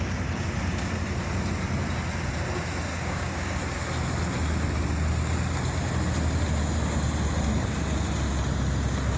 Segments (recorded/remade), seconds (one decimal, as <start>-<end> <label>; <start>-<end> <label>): 0.0-2.9 recorded; 2.9-3.6 remade; 3.6-9.2 recorded